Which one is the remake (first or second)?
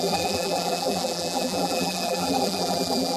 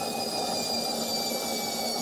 first